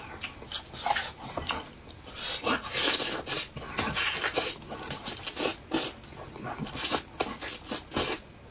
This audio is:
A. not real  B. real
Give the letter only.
B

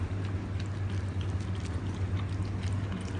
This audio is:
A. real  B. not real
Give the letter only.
A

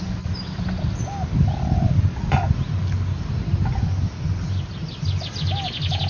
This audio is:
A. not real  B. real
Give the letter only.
B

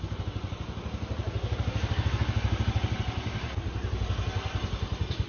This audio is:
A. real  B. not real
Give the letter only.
A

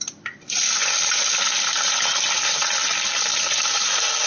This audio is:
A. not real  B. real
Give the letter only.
B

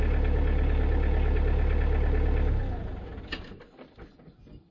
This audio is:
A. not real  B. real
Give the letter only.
B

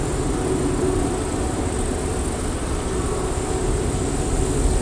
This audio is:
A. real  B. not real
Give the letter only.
A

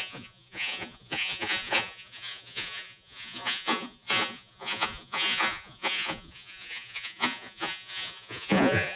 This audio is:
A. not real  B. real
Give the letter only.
A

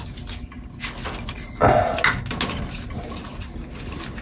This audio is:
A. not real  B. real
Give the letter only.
B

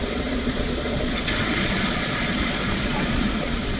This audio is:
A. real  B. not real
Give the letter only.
B